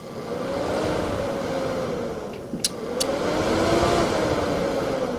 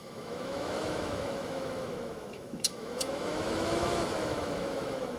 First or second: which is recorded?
first